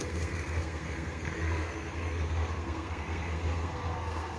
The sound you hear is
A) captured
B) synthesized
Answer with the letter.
B